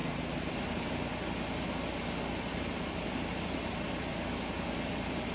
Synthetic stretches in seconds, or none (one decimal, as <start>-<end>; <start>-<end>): 0.0-0.9; 2.5-4.1